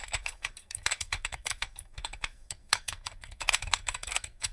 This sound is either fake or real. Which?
fake